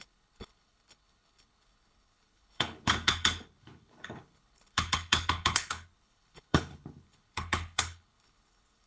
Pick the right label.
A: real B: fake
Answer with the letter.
B